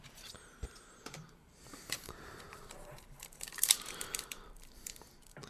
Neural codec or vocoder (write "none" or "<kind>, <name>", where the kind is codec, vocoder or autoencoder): vocoder, BigVGAN v2